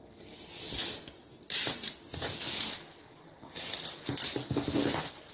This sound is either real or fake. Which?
real